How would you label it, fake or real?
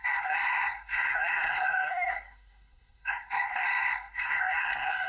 fake